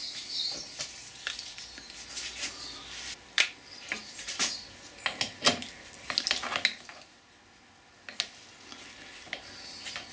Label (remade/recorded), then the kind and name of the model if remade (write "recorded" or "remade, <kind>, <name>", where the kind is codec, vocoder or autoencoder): recorded